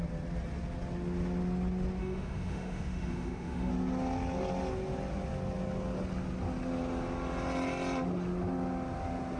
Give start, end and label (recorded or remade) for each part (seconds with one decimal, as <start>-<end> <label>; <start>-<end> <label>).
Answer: 0.0-2.0 recorded; 2.0-3.7 remade; 3.7-9.4 recorded